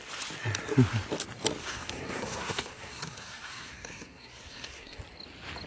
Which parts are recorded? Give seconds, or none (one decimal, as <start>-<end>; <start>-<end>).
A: 0.0-1.6; 5.0-5.7